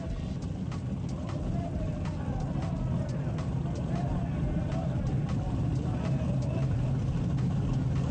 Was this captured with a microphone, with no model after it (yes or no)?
yes